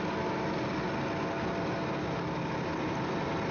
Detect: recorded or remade recorded